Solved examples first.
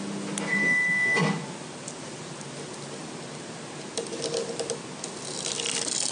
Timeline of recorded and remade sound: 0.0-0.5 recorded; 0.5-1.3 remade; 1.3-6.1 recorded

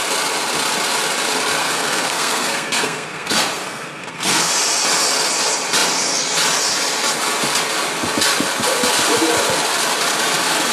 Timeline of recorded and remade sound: 0.0-1.6 recorded; 1.6-4.5 remade; 4.5-10.7 recorded